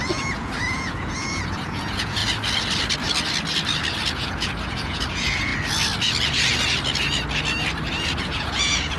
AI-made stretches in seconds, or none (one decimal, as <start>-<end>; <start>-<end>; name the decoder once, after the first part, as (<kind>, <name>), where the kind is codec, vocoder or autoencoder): 0.0-2.2 (vocoder, Vocos); 4.1-5.5; 8.2-9.0